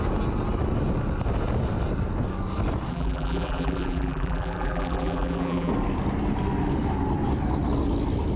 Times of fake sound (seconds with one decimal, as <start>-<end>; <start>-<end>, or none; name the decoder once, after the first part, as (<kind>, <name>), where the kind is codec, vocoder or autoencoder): 2.9-5.7 (vocoder, BigVGAN v2)